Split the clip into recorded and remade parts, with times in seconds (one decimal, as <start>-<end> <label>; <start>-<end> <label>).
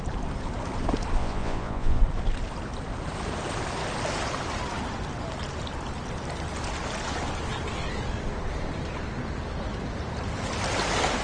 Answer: 0.0-1.2 recorded; 1.2-2.0 remade; 2.0-11.2 recorded